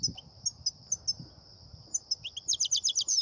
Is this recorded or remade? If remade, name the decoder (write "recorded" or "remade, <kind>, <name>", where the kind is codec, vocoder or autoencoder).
recorded